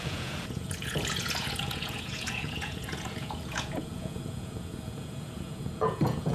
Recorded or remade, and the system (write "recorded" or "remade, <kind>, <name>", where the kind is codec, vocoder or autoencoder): remade, vocoder, Vocos